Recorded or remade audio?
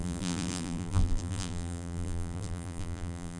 remade